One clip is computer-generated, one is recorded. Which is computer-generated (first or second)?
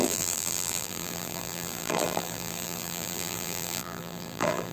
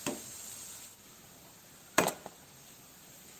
first